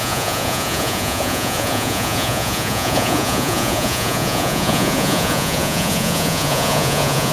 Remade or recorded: remade